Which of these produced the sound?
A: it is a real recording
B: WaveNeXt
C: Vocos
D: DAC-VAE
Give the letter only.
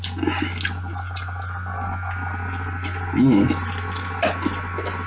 A